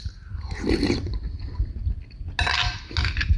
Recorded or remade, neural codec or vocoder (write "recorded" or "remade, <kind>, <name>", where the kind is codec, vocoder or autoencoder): recorded